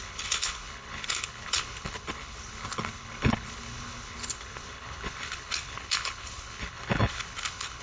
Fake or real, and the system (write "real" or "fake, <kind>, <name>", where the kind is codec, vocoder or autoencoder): fake, codec, HILCodec